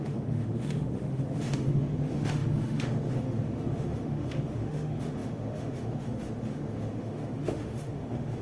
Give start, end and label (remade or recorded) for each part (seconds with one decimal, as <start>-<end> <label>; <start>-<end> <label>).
0.0-8.4 remade